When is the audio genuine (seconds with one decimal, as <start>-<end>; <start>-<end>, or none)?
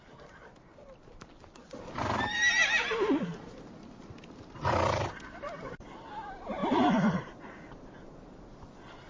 0.0-3.3; 6.1-9.1